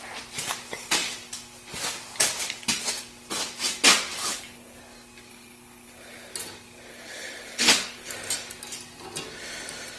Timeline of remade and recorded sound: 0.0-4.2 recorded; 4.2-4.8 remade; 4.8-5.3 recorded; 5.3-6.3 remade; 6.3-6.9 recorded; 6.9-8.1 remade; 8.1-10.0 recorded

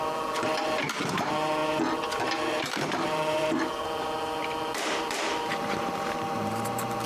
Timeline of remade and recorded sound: 0.0-1.6 remade; 1.6-2.6 recorded; 2.6-7.1 remade

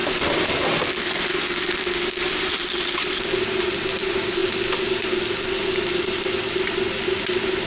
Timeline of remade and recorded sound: 0.0-7.7 recorded

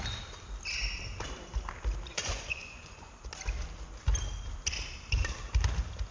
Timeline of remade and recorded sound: 0.0-2.1 recorded; 2.1-3.1 remade; 3.1-6.1 recorded

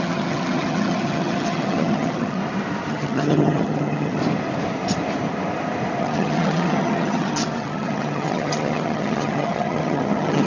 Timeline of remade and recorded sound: 0.0-2.4 remade; 2.4-2.9 recorded; 2.9-4.2 remade; 4.2-6.0 recorded; 6.0-10.5 remade

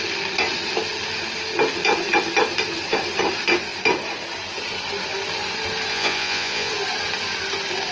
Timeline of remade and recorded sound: 0.0-5.9 recorded; 5.9-6.7 remade; 6.7-7.9 recorded

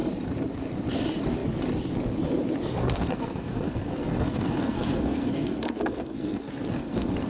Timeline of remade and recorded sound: 0.0-2.8 recorded; 2.8-7.3 remade

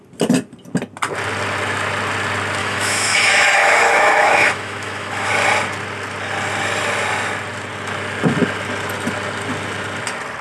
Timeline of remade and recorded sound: 0.0-2.6 recorded; 2.6-5.3 remade; 5.3-10.4 recorded